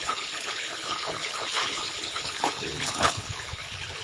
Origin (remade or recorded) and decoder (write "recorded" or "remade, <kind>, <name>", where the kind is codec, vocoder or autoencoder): remade, codec, HILCodec